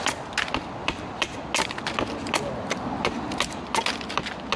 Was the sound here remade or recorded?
recorded